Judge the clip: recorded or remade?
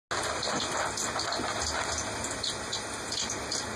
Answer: recorded